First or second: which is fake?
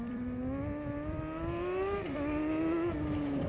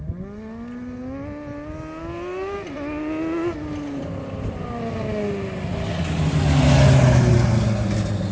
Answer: first